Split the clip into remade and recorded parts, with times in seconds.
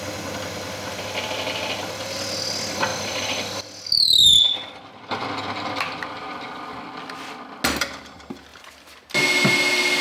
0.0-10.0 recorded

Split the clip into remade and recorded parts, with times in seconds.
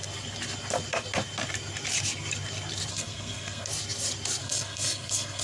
0.0-2.9 recorded; 2.9-3.7 remade; 3.7-4.4 recorded; 4.4-5.4 remade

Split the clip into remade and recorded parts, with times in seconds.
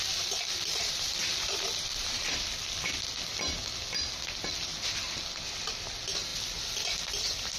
0.0-0.7 recorded; 0.7-2.2 remade; 2.2-7.6 recorded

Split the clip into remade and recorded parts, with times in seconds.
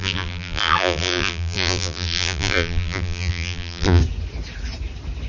0.0-4.0 remade; 4.0-5.3 recorded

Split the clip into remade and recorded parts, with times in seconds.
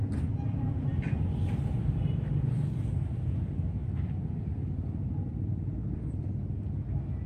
0.0-3.8 recorded; 3.8-6.7 remade; 6.7-7.3 recorded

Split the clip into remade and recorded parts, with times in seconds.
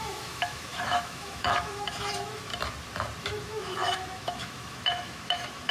0.0-2.5 remade; 2.5-3.2 recorded; 3.2-5.7 remade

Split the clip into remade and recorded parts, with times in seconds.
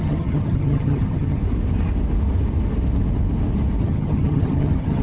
0.0-1.4 remade; 1.4-3.8 recorded; 3.8-5.0 remade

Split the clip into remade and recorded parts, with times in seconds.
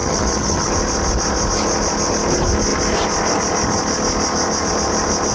0.0-0.7 remade; 0.7-5.3 recorded